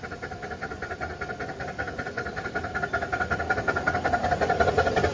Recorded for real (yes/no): yes